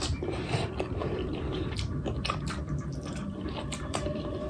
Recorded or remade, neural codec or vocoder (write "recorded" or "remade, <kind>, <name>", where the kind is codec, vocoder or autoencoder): remade, vocoder, BigVGAN v2